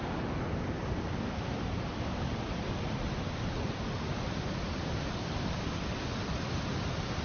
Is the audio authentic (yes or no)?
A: yes